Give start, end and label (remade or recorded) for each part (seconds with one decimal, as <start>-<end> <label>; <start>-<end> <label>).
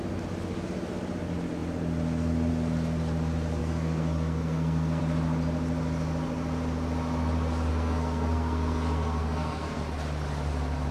0.0-3.6 recorded; 3.6-5.0 remade; 5.0-7.7 recorded; 7.7-9.8 remade; 9.8-10.9 recorded